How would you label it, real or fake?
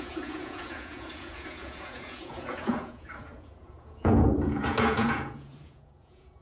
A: fake